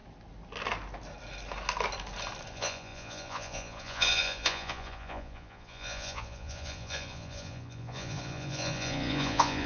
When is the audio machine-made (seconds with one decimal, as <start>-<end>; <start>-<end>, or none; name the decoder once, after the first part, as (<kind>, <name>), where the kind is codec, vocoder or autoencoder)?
2.5-9.7 (vocoder, Vocos)